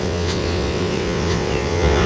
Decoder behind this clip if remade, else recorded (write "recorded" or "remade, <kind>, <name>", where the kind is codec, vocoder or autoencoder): remade, vocoder, WaveNeXt